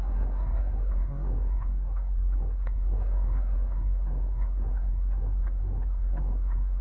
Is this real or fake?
fake